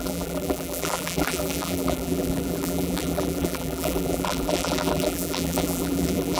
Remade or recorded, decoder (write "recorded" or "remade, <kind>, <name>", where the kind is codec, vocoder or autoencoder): remade, vocoder, BigVGAN v2